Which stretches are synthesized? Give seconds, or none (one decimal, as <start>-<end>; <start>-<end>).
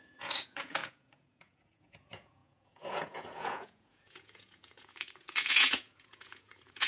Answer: 0.0-6.9